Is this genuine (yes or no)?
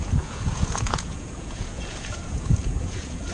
no